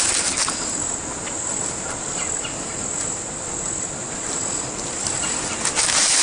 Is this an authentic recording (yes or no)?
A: yes